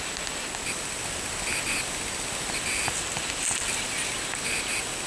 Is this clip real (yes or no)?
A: yes